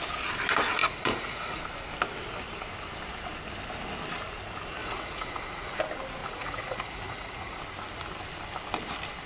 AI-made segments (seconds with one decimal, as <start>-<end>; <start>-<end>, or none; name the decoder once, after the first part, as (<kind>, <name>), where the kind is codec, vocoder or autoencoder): 0.8-1.6 (vocoder, Vocos); 4.8-5.8; 6.2-7.6